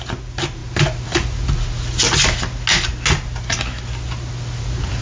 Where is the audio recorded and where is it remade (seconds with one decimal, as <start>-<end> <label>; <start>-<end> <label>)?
0.0-5.0 recorded